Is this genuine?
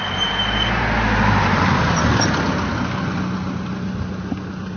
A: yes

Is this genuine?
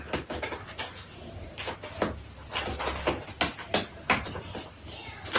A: yes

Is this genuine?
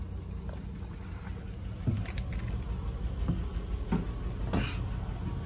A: yes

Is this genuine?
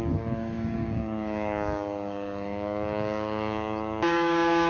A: no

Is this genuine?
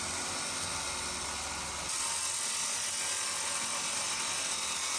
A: yes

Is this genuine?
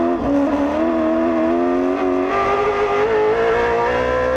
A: yes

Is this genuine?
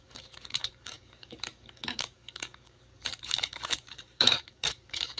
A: no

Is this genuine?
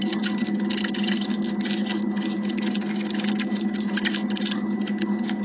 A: yes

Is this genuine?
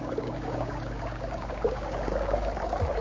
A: no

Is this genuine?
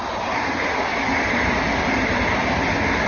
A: yes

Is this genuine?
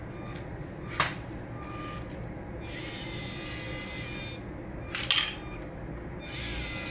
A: yes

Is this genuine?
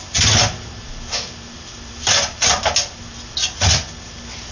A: yes